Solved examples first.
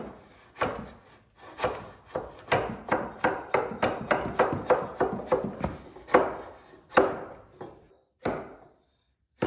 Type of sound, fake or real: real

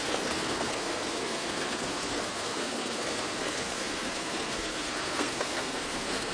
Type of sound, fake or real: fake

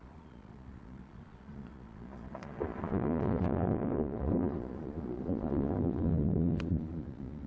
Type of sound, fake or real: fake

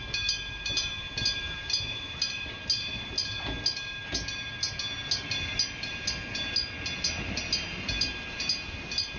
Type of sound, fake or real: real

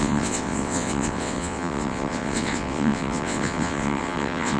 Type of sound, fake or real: fake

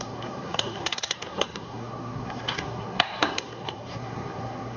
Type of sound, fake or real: fake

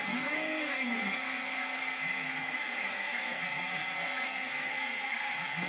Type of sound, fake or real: fake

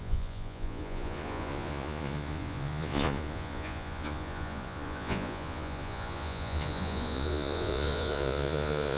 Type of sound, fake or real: fake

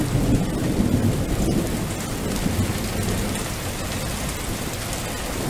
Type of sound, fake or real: real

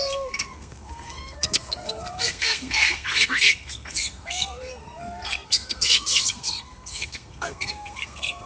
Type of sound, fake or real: fake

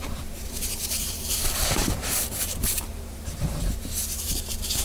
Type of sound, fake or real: fake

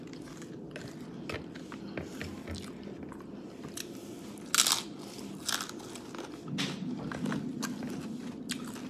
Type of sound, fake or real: real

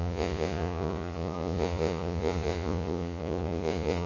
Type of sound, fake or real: fake